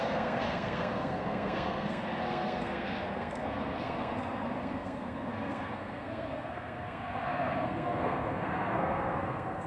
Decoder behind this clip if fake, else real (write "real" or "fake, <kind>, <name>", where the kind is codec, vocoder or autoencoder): fake, codec, SNAC